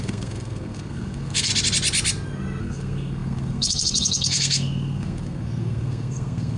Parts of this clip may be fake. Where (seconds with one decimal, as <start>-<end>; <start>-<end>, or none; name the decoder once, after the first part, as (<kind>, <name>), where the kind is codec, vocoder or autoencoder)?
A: 0.0-1.5 (codec, SNAC); 2.6-6.6